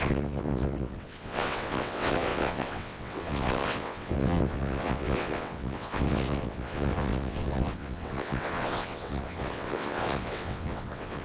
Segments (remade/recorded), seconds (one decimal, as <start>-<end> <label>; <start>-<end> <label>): 0.0-11.2 remade